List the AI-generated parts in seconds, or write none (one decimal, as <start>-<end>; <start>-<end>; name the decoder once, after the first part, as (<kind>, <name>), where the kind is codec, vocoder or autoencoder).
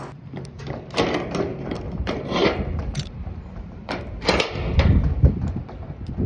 1.5-4.0 (vocoder, BigVGAN v2)